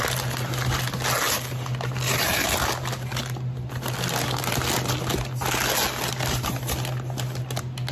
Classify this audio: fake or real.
real